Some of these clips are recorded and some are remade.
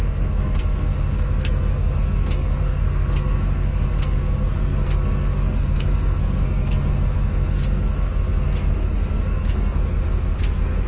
remade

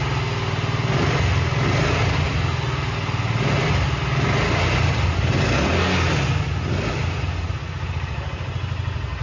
recorded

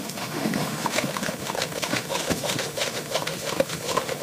remade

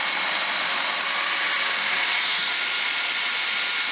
recorded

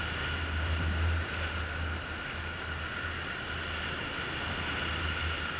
recorded